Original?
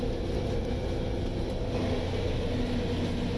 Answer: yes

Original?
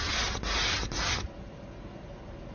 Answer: yes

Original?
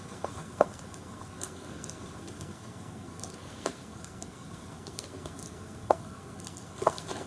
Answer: no